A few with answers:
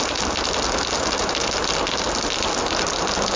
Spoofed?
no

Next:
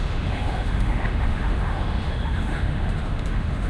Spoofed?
yes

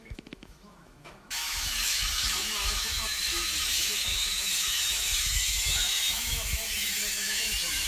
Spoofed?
yes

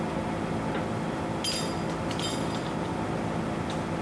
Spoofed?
no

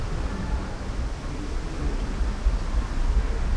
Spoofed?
no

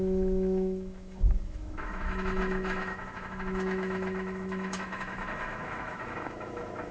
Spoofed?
yes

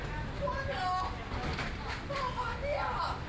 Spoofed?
no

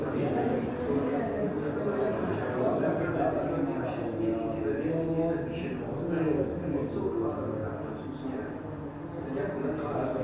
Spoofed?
no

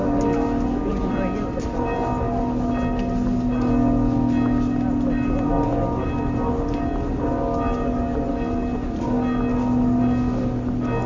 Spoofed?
no